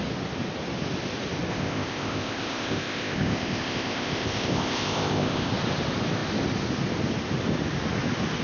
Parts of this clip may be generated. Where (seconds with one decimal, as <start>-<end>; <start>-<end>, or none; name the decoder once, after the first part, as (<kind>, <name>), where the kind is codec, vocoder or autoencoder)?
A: 1.5-5.5 (codec, ZipCodec)